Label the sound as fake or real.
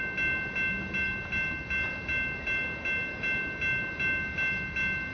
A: real